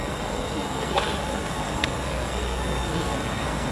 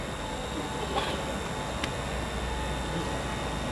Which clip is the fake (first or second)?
first